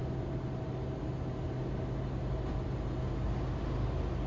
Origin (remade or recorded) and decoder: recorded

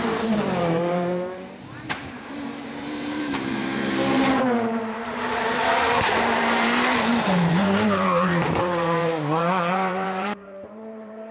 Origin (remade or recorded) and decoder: remade, vocoder, BigVGAN v2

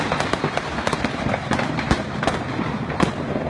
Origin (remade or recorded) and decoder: remade, vocoder, BigVGAN v2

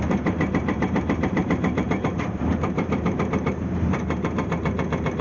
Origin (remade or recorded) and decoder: remade, vocoder, BigVGAN v2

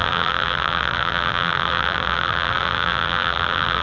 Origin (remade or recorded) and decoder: remade, vocoder, BigVGAN v2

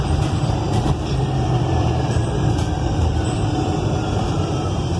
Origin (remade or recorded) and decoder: remade, vocoder, BigVGAN v2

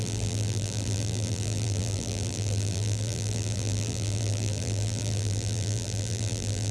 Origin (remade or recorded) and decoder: remade, vocoder, BigVGAN v2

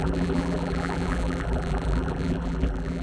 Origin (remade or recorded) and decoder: remade, vocoder, BigVGAN v2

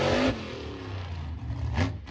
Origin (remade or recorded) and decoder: recorded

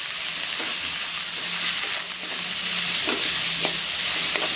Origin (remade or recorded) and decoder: recorded